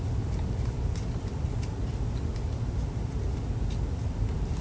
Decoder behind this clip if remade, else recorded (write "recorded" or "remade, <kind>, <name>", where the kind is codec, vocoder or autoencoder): recorded